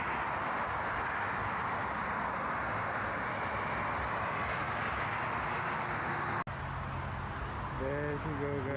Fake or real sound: real